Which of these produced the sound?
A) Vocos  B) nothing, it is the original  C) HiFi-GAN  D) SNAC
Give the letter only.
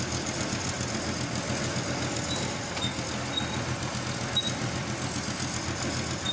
B